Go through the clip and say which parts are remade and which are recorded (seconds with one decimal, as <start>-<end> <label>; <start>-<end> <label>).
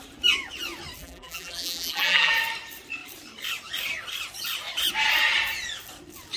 0.0-1.0 recorded; 1.0-2.3 remade; 2.3-6.4 recorded